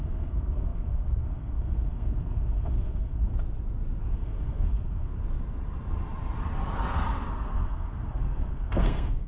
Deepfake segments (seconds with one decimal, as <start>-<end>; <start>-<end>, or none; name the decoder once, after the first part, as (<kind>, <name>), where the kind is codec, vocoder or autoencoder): 0.0-3.3 (codec, SNAC); 4.0-5.1; 7.3-9.3